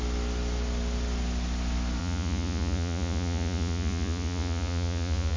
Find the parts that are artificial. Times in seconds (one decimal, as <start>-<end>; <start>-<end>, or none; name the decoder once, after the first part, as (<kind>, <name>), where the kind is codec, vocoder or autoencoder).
2.0-5.4 (vocoder, Vocos)